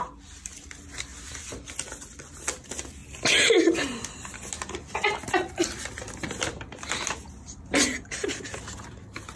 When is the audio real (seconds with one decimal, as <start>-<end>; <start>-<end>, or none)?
0.0-3.0; 3.7-9.4